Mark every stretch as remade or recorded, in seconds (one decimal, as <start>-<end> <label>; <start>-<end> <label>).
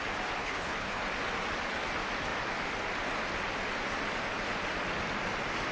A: 0.0-0.4 recorded; 0.4-1.0 remade; 1.0-5.7 recorded